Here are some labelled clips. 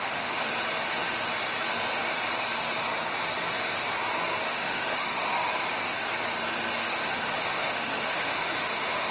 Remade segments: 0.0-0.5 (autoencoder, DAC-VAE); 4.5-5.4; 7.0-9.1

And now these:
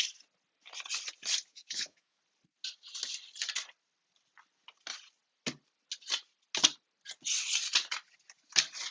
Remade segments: 1.5-2.2 (autoencoder, DAC-VAE)

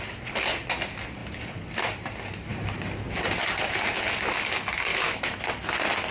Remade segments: 4.9-5.4 (autoencoder, DAC-VAE)

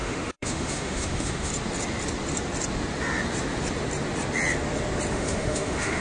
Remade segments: 0.0-1.5 (autoencoder, DAC-VAE); 5.1-6.0

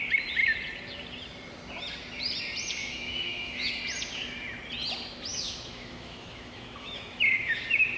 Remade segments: 2.8-3.7 (autoencoder, DAC-VAE); 5.3-7.6

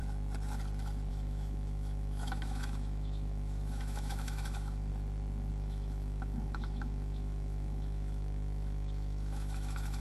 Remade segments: 1.1-4.9 (autoencoder, DAC-VAE); 5.5-10.0